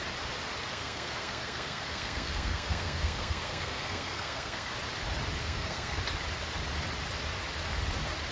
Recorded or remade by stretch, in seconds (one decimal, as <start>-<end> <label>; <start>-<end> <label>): 0.0-0.7 recorded; 0.7-4.7 remade; 4.7-5.4 recorded; 5.4-6.0 remade; 6.0-8.3 recorded